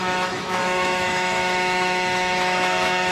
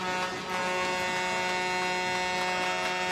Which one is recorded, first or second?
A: second